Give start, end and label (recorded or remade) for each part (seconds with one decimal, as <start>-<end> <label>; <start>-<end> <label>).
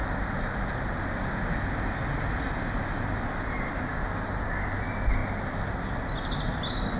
0.0-7.0 recorded